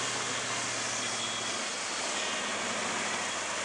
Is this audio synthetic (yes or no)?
no